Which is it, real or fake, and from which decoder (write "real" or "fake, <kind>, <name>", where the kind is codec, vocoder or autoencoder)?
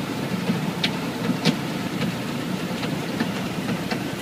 fake, vocoder, BigVGAN v2